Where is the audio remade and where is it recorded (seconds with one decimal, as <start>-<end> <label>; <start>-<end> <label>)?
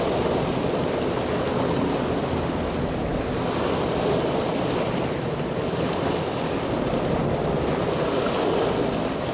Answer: 0.0-9.3 recorded